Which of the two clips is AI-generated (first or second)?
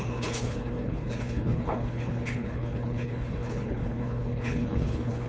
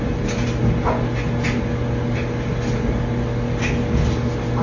first